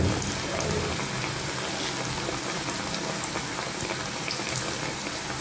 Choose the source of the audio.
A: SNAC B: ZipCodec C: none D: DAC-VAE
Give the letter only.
C